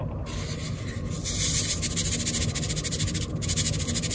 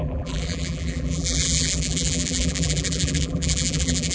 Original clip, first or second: first